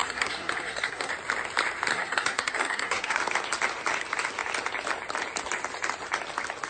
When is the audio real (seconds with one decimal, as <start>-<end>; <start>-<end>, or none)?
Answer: 1.1-1.9; 3.2-6.7

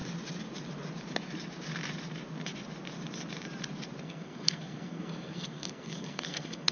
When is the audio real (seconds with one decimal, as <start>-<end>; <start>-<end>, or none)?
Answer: 0.0-4.0

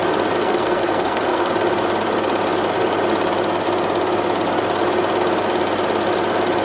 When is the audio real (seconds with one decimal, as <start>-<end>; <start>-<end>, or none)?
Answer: 0.0-0.4; 1.5-6.6

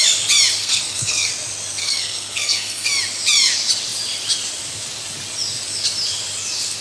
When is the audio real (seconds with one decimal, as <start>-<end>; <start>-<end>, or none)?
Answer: 0.0-0.6; 1.3-1.8; 2.9-6.8